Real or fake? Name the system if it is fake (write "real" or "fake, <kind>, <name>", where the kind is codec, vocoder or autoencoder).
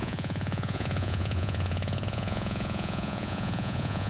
fake, vocoder, Vocos